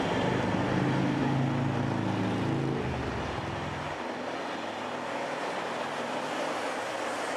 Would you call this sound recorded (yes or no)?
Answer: yes